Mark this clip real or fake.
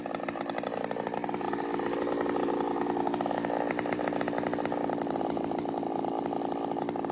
real